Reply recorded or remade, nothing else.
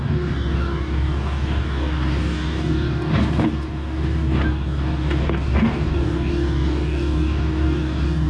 remade